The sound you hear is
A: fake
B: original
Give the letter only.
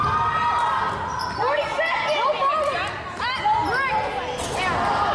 B